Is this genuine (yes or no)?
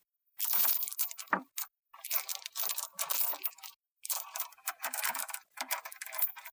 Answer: no